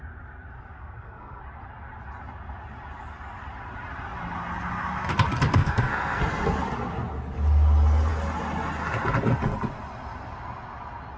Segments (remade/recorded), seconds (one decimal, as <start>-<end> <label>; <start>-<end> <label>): 0.0-0.8 recorded; 0.8-1.4 remade; 1.4-5.5 recorded; 5.5-6.2 remade; 6.2-11.2 recorded